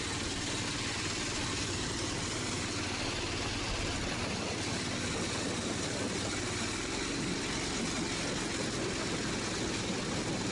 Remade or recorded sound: recorded